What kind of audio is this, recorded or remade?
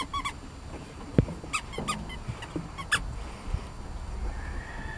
recorded